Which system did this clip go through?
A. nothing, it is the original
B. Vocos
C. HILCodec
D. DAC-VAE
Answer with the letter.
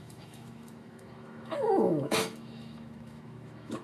D